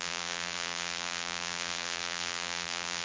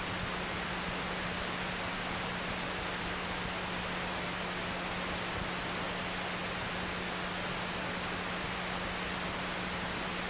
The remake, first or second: first